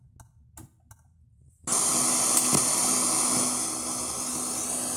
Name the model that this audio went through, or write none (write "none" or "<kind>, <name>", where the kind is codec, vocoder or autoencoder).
none